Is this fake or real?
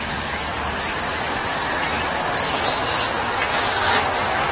real